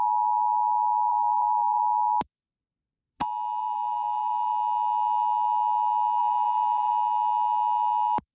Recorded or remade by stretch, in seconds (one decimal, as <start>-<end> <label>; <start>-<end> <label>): 0.0-1.1 recorded; 1.1-1.8 remade; 1.8-3.6 recorded; 3.6-4.5 remade; 4.5-6.2 recorded; 6.2-6.9 remade; 6.9-8.3 recorded